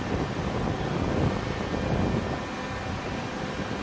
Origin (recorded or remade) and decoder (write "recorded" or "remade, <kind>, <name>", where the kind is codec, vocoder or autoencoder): recorded